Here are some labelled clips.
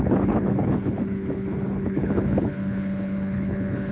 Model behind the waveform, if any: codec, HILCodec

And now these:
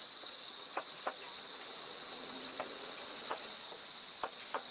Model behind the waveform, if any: vocoder, WaveNeXt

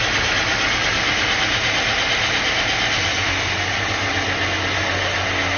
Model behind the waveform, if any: none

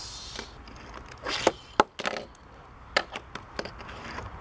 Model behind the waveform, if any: none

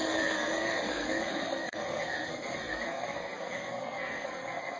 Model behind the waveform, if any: codec, SNAC